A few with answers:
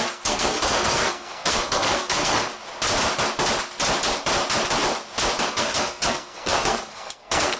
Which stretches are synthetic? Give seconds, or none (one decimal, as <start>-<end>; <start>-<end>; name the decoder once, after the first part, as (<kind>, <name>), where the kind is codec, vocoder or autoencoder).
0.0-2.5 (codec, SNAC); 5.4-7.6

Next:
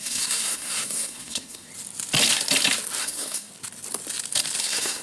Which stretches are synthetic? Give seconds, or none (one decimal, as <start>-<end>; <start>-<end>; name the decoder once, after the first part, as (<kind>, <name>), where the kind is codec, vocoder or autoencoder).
0.0-1.7 (codec, SNAC); 3.0-3.5; 4.6-5.0

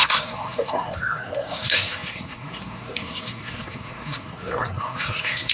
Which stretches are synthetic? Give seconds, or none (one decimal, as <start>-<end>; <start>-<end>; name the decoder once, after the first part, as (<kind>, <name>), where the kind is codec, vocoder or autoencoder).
0.0-5.5 (codec, SNAC)

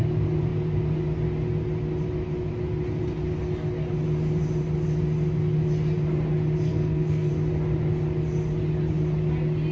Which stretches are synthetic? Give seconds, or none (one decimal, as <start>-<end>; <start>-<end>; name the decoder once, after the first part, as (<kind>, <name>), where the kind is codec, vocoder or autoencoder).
6.7-7.3 (codec, SNAC)

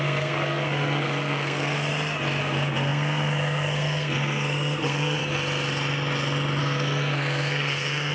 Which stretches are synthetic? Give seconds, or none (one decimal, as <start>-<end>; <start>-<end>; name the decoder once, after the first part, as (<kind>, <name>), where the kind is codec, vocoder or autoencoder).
0.0-1.9 (codec, SNAC); 2.4-5.2; 6.6-8.1